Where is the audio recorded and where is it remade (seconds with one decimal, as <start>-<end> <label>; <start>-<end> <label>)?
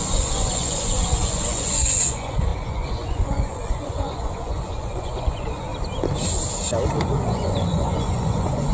0.0-5.7 remade; 5.7-7.1 recorded; 7.1-8.7 remade